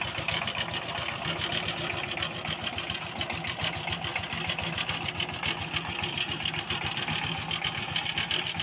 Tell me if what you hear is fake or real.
real